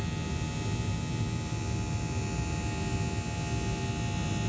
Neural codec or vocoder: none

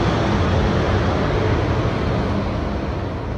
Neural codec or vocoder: none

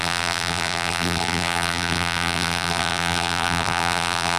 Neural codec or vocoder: vocoder, BigVGAN v2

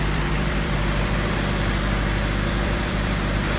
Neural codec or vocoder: vocoder, BigVGAN v2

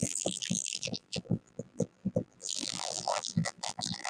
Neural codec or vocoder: vocoder, BigVGAN v2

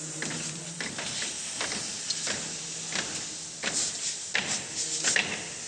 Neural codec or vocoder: none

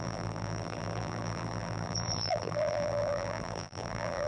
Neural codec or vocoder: vocoder, BigVGAN v2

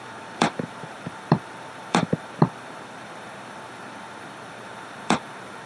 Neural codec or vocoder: vocoder, BigVGAN v2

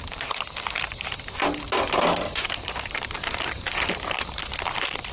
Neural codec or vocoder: vocoder, BigVGAN v2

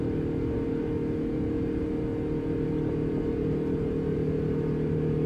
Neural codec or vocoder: none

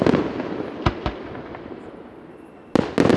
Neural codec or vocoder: none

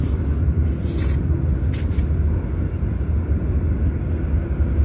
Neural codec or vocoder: none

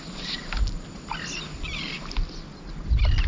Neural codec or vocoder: none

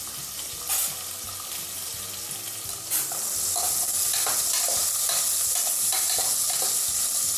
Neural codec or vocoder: none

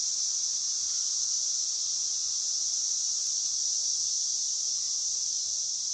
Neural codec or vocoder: vocoder, BigVGAN v2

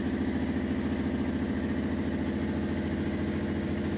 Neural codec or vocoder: none